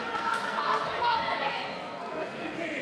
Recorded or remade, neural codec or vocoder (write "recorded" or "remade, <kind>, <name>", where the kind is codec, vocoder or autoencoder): remade, codec, SNAC